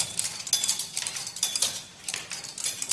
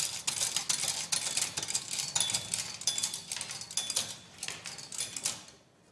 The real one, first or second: second